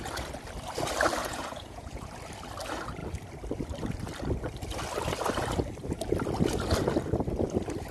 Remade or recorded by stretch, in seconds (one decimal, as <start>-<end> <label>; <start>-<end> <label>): 0.0-1.2 recorded; 1.2-2.1 remade; 2.1-7.9 recorded